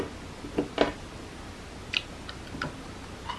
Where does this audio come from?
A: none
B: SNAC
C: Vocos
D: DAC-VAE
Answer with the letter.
A